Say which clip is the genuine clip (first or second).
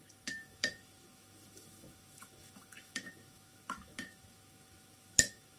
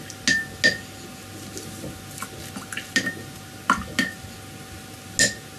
second